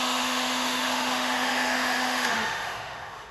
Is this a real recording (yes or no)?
no